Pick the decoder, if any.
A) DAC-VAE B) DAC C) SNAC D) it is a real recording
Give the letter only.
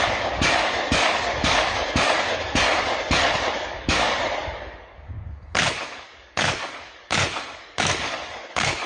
B